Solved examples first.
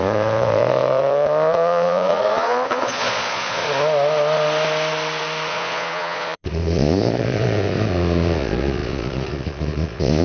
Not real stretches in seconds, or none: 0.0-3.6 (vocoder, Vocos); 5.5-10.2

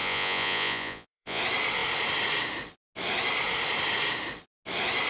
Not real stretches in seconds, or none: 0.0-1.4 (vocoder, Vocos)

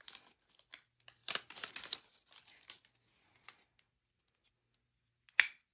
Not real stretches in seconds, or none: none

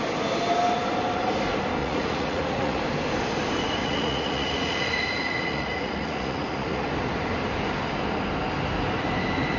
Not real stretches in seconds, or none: 1.8-2.8 (vocoder, Vocos); 3.8-6.9

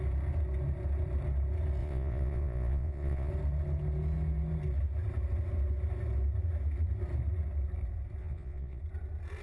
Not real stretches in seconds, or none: 1.8-3.3 (vocoder, Vocos); 8.2-8.8

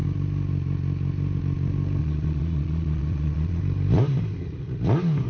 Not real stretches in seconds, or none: 2.0-3.6 (vocoder, Vocos)

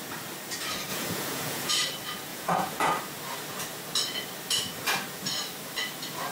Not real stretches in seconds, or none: 0.9-1.7 (vocoder, Vocos); 2.3-2.9

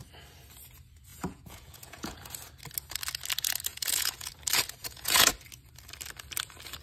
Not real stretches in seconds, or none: 1.1-2.3 (vocoder, Vocos); 3.7-4.3; 4.8-5.3